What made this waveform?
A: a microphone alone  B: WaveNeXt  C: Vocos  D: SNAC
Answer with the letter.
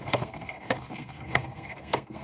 D